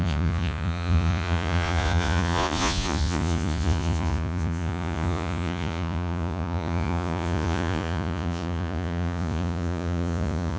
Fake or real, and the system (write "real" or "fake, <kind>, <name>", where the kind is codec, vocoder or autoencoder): fake, vocoder, Vocos